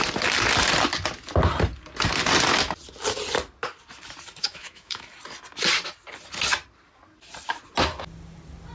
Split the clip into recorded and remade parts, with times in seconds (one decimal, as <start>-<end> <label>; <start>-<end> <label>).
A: 0.0-4.4 recorded; 4.4-5.1 remade; 5.1-8.7 recorded